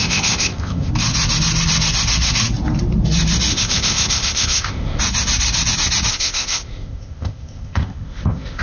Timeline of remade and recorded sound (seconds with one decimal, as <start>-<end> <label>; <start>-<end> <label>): 0.0-0.9 remade; 0.9-3.5 recorded; 3.5-5.0 remade; 5.0-6.1 recorded; 6.1-8.6 remade